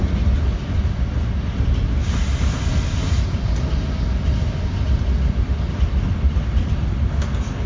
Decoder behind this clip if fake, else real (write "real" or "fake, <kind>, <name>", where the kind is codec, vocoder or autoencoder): real